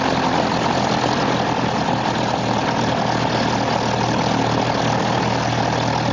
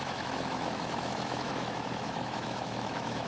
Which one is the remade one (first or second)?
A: second